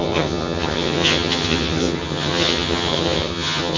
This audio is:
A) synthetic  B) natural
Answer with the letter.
A